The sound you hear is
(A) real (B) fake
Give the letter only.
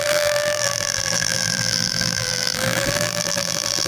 B